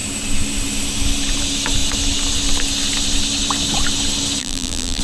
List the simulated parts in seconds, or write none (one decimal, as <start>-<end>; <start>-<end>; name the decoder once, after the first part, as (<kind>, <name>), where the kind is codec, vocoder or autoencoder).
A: 4.4-5.0 (vocoder, BigVGAN v2)